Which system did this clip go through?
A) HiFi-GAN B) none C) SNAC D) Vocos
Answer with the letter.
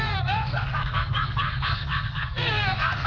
C